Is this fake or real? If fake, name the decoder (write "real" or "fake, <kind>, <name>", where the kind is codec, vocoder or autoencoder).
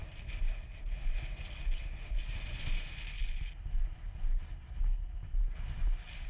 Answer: real